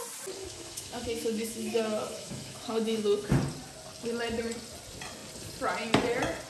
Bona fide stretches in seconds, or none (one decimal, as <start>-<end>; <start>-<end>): 0.0-0.4; 3.3-6.5